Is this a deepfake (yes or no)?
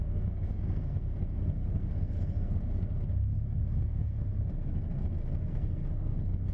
yes